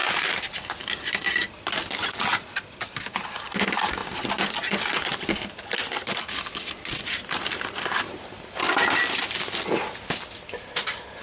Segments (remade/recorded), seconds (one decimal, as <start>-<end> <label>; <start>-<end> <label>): 0.0-1.3 remade; 1.3-11.2 recorded